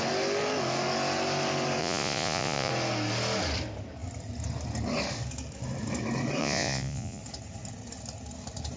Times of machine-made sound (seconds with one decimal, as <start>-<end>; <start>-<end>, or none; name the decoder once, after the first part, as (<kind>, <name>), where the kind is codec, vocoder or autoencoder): 1.8-2.7 (vocoder, Vocos); 6.4-7.2